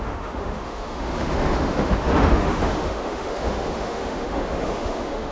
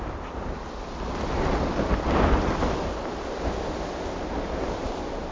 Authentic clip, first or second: second